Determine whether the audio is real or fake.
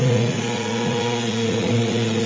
fake